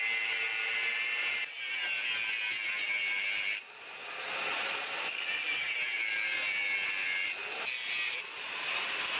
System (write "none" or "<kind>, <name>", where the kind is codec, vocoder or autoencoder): none